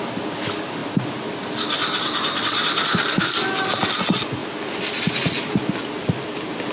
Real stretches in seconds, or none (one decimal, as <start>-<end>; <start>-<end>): 0.0-6.7